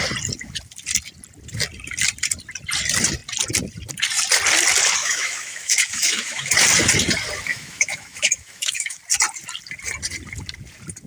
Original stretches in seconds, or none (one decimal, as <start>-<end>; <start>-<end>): 0.0-5.0; 6.5-7.5; 9.0-11.1